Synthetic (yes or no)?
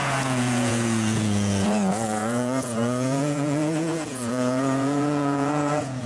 yes